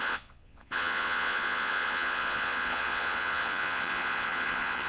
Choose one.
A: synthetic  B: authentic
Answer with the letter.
A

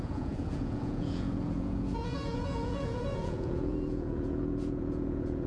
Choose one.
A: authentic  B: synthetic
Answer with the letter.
B